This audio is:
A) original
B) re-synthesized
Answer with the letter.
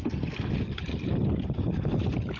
A